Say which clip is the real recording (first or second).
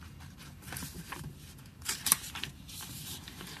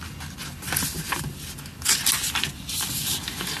second